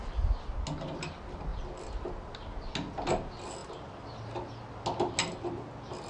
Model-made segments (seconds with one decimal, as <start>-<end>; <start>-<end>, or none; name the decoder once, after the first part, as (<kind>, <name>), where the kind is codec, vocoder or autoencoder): none